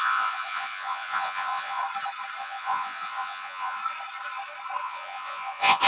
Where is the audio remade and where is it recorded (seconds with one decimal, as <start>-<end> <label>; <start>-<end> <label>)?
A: 0.0-1.8 remade; 1.8-2.4 recorded; 2.4-3.8 remade; 3.8-4.8 recorded; 4.8-5.9 remade